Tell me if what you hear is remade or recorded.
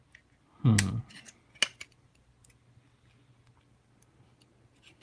recorded